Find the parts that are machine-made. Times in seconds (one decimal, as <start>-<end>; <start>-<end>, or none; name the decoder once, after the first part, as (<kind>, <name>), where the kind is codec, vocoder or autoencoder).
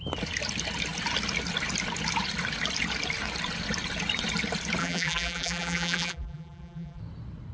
4.8-7.0 (vocoder, BigVGAN v2)